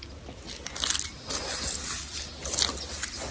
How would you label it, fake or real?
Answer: real